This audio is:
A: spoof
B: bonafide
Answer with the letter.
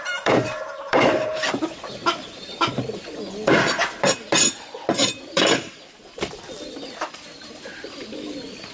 A